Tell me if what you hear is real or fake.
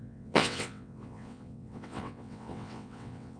fake